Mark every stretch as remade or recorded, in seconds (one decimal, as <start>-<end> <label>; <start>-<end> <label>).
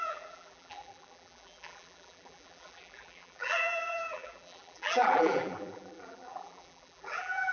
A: 0.0-7.5 remade